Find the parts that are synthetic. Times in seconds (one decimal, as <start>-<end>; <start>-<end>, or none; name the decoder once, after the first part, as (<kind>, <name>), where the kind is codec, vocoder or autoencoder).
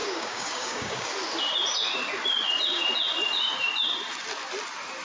0.0-1.1 (codec, DAC)